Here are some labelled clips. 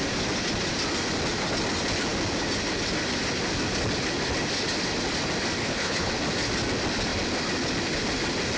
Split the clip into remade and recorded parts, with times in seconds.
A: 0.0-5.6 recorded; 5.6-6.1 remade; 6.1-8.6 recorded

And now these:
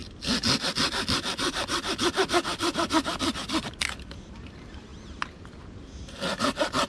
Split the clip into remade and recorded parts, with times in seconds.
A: 0.0-6.9 recorded